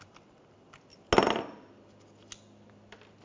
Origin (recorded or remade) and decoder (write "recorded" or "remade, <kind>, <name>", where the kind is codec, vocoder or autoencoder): recorded